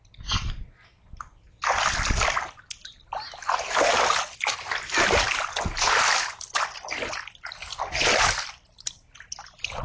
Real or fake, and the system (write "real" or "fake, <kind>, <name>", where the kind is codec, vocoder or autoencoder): real